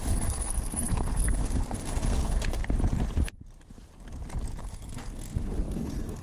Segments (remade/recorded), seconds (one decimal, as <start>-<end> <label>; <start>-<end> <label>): 0.0-2.6 remade; 2.6-4.6 recorded; 4.6-6.2 remade

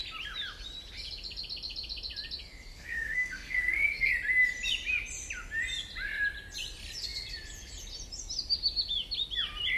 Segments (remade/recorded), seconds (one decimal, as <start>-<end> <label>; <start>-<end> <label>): 0.0-2.7 recorded; 2.7-4.1 remade; 4.1-9.8 recorded

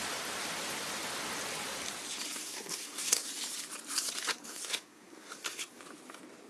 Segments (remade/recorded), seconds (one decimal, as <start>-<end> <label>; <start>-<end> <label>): 0.0-2.4 recorded; 2.4-3.3 remade; 3.3-4.3 recorded; 4.3-5.8 remade; 5.8-6.5 recorded

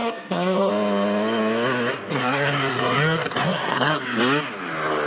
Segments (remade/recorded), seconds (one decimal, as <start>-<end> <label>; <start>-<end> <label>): 0.0-0.7 remade; 0.7-2.1 recorded; 2.1-4.0 remade; 4.0-5.1 recorded

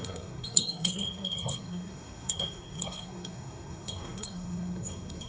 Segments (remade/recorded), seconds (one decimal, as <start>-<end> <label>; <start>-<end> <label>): 0.0-5.3 remade

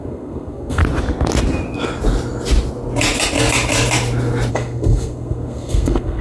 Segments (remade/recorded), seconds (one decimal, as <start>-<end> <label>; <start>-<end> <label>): 0.0-0.8 remade; 0.8-4.5 recorded; 4.5-6.2 remade

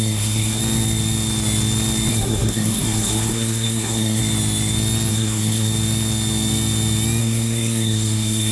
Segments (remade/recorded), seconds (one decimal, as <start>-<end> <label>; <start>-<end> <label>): 0.0-0.6 remade; 0.6-2.1 recorded; 2.1-4.2 remade; 4.2-5.1 recorded; 5.1-5.7 remade; 5.7-7.2 recorded; 7.2-8.5 remade

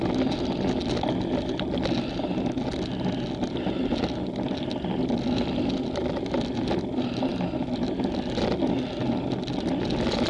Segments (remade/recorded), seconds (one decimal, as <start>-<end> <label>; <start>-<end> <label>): 0.0-10.3 recorded